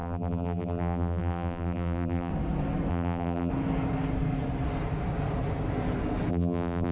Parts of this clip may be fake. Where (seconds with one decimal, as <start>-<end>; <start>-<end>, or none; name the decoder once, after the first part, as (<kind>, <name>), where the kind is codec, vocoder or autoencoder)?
0.0-2.3 (vocoder, BigVGAN v2); 2.9-3.5; 6.3-6.9